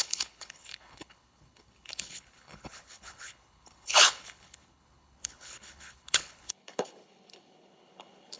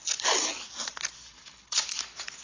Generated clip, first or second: first